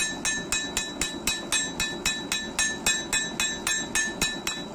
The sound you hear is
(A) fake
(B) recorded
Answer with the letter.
B